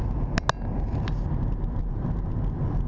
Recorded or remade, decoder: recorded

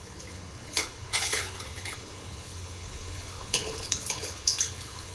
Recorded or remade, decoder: remade, codec, HILCodec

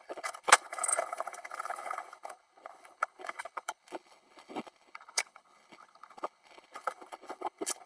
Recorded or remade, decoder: remade, codec, HILCodec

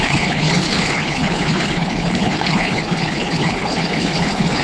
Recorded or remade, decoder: remade, codec, HILCodec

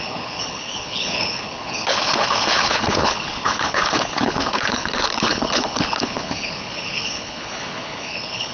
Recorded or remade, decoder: remade, codec, HILCodec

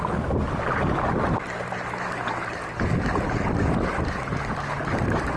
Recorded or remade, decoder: recorded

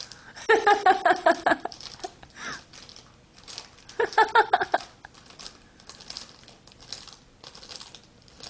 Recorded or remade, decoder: recorded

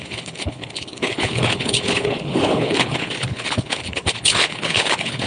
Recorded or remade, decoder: remade, codec, HILCodec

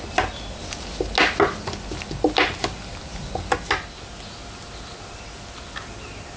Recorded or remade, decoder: recorded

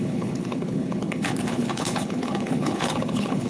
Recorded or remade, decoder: remade, codec, HILCodec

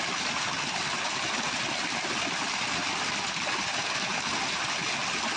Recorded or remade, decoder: recorded